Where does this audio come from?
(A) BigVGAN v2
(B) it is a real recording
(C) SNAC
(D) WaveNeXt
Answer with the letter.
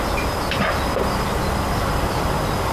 B